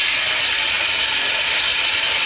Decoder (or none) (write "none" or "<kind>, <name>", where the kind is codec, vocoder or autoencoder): none